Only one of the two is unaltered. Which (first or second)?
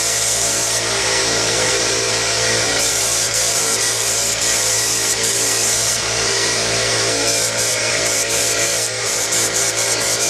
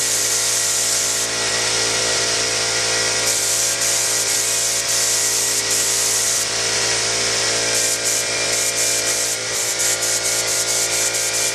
second